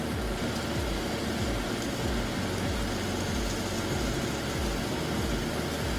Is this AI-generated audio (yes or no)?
no